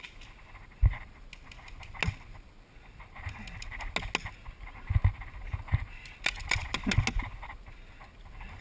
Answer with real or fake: real